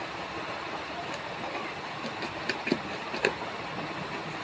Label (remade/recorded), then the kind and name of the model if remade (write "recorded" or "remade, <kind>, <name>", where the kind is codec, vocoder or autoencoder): recorded